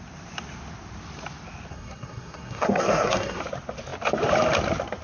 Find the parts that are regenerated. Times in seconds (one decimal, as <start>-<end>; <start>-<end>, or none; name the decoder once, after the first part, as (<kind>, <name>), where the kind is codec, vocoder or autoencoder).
1.7-3.4 (codec, SNAC)